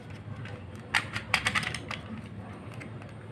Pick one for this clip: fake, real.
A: real